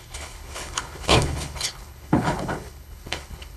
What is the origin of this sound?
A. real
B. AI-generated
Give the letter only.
B